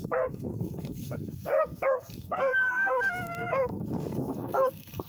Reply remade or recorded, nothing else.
remade